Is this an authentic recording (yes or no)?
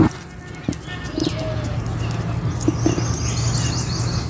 yes